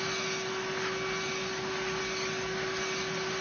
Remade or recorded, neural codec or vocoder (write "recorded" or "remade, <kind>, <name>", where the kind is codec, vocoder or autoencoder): recorded